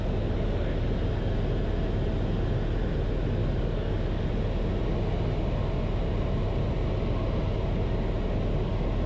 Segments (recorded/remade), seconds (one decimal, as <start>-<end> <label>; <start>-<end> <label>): 0.0-3.4 recorded; 3.4-4.2 remade; 4.2-9.1 recorded